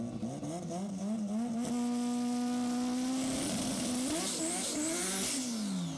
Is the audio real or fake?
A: real